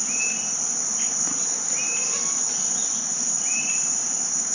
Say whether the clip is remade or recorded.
recorded